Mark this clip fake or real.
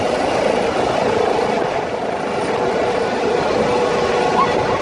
real